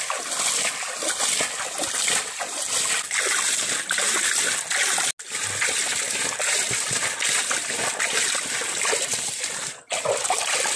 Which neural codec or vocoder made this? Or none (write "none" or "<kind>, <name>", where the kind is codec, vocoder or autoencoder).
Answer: none